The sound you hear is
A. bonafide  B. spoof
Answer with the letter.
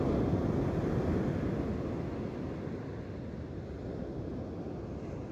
A